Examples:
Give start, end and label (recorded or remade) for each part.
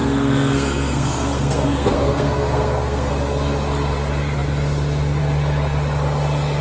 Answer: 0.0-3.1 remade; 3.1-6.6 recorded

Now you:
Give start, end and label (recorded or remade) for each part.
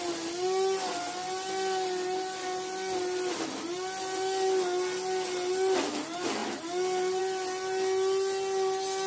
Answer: 0.0-9.1 recorded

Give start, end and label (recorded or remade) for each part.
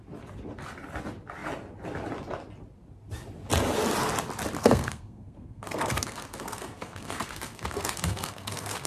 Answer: 0.0-4.6 recorded; 4.6-8.9 remade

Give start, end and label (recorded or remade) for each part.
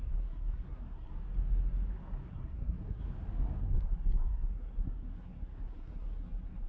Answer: 0.0-1.1 remade; 1.1-2.3 recorded; 2.3-3.0 remade; 3.0-3.6 recorded; 3.6-6.7 remade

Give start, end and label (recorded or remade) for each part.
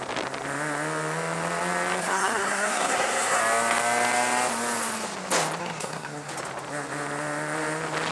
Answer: 0.0-2.0 recorded; 2.0-3.4 remade; 3.4-5.6 recorded; 5.6-6.3 remade; 6.3-8.1 recorded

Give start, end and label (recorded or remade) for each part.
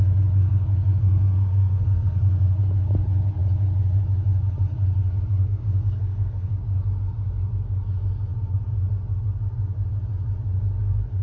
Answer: 0.0-0.4 recorded; 0.4-2.6 remade; 2.6-5.4 recorded; 5.4-6.5 remade; 6.5-11.2 recorded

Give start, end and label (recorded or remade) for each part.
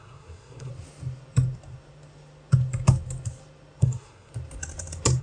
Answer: 0.0-0.7 remade; 0.7-3.8 recorded; 3.8-4.3 remade; 4.3-5.2 recorded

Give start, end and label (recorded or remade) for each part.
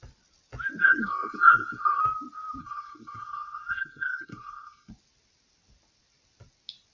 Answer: 0.0-0.8 recorded; 0.8-2.0 remade; 2.0-2.6 recorded; 2.6-4.9 remade; 4.9-6.9 recorded